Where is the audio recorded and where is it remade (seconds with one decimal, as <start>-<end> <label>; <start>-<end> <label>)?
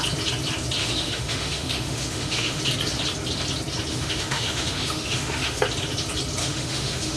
0.0-0.8 recorded; 0.8-2.6 remade; 2.6-3.9 recorded; 3.9-5.6 remade; 5.6-6.4 recorded; 6.4-7.2 remade